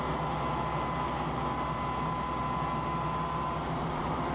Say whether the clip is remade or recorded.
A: recorded